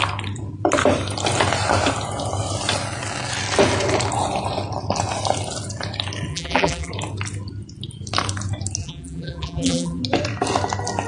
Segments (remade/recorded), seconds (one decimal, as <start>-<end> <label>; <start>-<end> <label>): 0.0-6.3 recorded; 6.3-6.9 remade; 6.9-8.8 recorded; 8.8-10.0 remade; 10.0-11.1 recorded